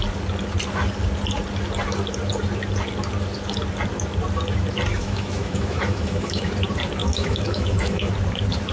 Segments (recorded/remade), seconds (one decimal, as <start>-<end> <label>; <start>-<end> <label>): 0.0-4.9 recorded; 4.9-6.5 remade; 6.5-7.0 recorded; 7.0-8.1 remade; 8.1-8.7 recorded